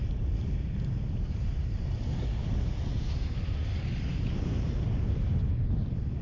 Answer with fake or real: real